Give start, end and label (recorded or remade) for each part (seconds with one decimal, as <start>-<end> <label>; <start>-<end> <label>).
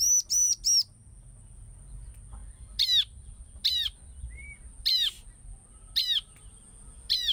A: 0.0-7.3 recorded